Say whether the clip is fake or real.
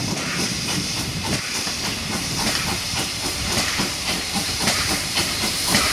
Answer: fake